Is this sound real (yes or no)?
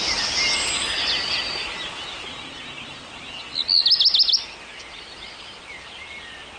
yes